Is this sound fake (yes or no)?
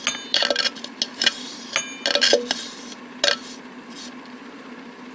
no